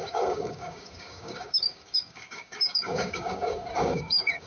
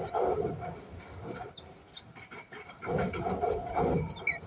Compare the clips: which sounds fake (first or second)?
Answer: first